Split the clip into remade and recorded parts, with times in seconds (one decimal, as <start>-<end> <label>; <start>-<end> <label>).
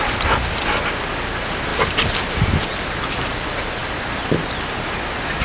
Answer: 0.0-5.4 recorded